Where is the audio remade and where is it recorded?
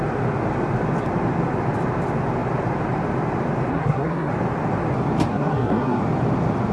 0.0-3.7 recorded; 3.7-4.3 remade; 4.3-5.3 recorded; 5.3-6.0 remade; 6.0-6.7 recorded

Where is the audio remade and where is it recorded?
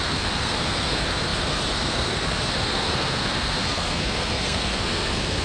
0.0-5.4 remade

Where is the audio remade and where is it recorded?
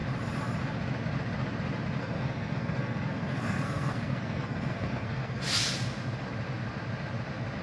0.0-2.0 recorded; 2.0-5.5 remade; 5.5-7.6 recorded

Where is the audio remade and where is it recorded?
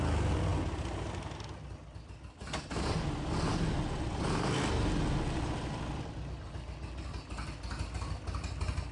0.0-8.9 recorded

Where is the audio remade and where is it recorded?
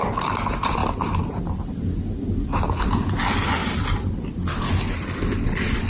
0.0-5.9 recorded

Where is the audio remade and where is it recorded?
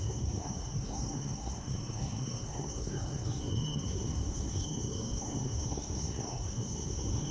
0.0-7.3 remade